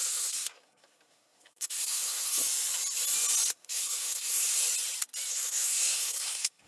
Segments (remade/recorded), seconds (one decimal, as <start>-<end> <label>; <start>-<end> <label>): 0.0-2.4 remade; 2.4-3.5 recorded; 3.5-4.6 remade; 4.6-5.3 recorded; 5.3-6.7 remade